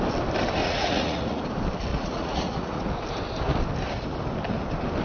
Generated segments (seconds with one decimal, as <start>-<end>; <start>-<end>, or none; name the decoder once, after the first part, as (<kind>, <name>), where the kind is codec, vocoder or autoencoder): 0.6-1.4 (vocoder, Vocos); 1.9-2.9